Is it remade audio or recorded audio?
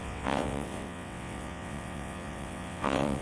remade